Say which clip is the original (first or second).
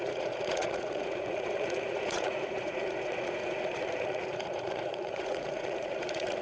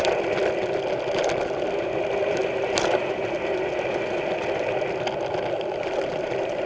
second